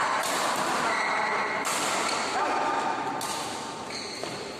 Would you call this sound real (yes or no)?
yes